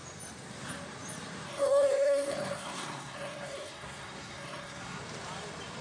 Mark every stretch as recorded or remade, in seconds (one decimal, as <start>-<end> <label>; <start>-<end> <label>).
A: 0.0-1.5 recorded; 1.5-5.0 remade; 5.0-5.8 recorded